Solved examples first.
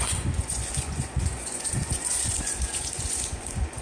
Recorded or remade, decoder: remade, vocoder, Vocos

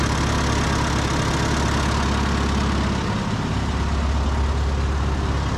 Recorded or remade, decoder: recorded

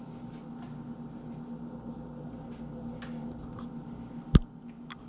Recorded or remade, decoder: recorded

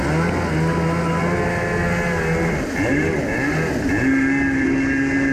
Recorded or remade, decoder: recorded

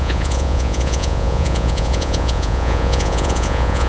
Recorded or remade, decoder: remade, vocoder, Vocos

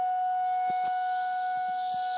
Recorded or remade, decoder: recorded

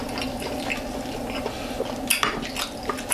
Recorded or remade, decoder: recorded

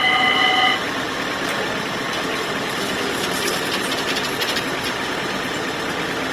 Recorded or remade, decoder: recorded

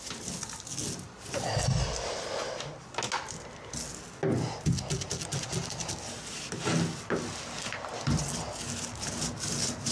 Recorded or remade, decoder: recorded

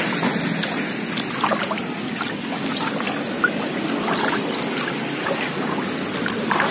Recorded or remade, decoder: recorded